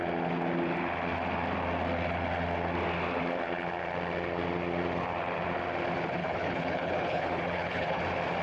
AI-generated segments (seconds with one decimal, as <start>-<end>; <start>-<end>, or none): 6.2-8.0